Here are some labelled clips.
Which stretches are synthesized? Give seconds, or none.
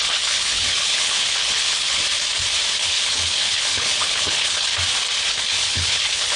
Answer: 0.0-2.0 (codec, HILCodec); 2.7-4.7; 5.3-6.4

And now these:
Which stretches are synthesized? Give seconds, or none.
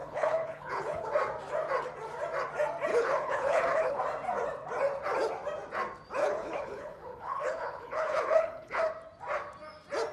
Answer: 0.0-1.1 (codec, HILCodec); 2.9-4.0; 6.2-8.9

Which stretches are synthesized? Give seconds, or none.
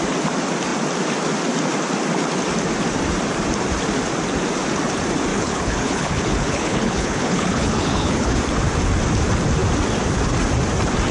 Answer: 5.3-8.4 (codec, HILCodec)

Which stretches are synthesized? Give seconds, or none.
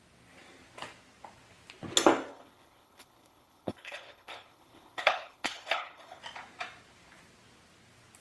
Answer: 2.3-6.2 (codec, HILCodec)